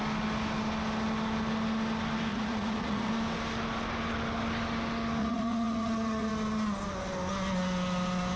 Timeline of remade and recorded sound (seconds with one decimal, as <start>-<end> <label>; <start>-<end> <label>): 0.0-2.3 recorded; 2.3-3.1 remade; 3.1-5.2 recorded; 5.2-6.3 remade; 6.3-8.4 recorded